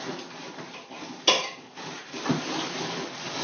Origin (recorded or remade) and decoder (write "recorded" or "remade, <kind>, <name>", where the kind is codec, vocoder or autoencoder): recorded